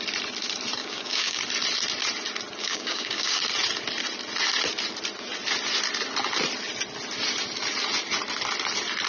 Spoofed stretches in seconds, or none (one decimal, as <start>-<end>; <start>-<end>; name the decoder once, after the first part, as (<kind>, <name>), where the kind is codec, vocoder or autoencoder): 0.8-1.4 (codec, DAC); 2.6-3.4